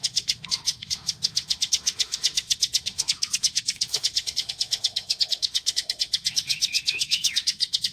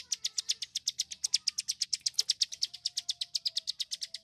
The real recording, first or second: second